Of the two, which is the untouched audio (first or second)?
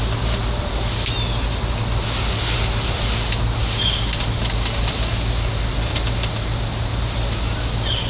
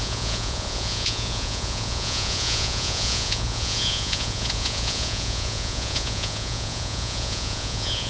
first